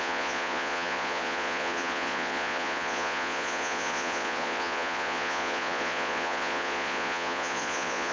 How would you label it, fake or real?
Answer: fake